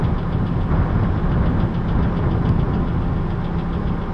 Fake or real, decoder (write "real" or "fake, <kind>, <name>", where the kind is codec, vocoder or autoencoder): real